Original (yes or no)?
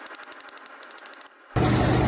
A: yes